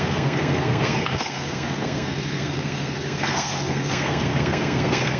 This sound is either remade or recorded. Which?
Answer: remade